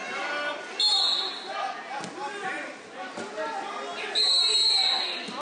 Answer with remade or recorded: recorded